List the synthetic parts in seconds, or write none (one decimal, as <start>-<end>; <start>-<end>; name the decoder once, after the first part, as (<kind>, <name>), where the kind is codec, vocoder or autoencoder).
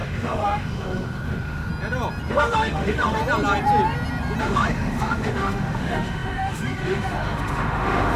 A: 0.0-1.7 (autoencoder, DAC-VAE); 2.3-3.2; 4.4-8.2